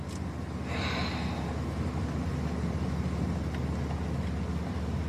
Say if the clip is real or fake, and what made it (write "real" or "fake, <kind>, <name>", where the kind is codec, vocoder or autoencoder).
real